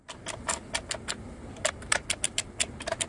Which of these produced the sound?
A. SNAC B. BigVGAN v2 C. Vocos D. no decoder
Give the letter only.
D